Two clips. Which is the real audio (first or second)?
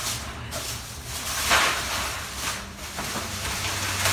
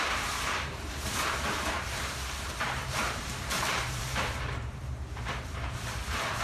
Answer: first